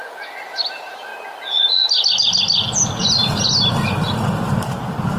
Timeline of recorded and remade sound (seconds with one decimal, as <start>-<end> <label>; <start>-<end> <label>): 0.0-1.1 remade; 1.1-4.2 recorded; 4.2-5.2 remade